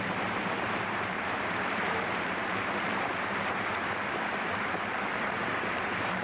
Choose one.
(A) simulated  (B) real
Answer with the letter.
A